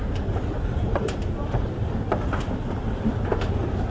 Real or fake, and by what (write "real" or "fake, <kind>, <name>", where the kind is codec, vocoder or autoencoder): fake, vocoder, BigVGAN v2